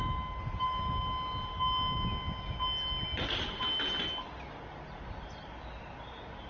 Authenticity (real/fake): real